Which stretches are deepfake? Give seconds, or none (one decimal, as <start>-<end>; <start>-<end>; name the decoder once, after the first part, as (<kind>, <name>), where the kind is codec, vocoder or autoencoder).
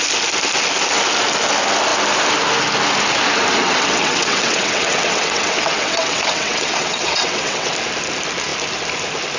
3.6-7.7 (vocoder, WaveNeXt)